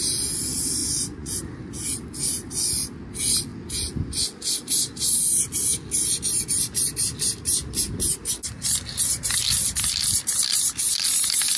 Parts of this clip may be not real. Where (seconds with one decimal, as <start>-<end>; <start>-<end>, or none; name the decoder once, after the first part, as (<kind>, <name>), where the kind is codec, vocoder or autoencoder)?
0.8-1.4 (vocoder, Vocos)